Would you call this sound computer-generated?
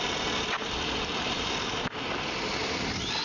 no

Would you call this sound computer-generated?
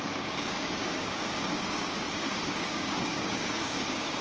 yes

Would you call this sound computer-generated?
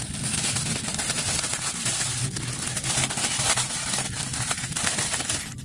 no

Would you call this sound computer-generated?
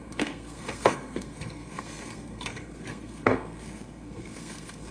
yes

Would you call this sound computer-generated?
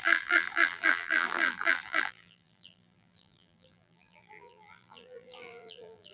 yes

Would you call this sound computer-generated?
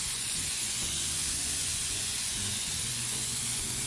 yes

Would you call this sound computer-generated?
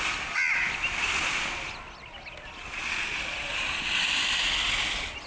no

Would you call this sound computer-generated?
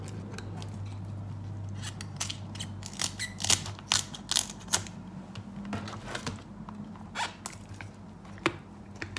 no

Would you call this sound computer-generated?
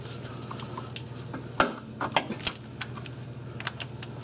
no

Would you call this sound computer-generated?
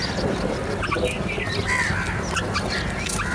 no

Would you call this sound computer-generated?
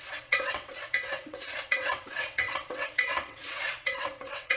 yes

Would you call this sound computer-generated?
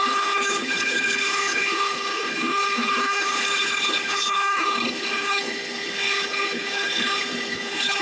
yes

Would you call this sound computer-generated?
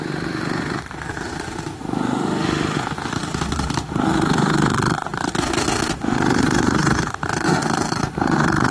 yes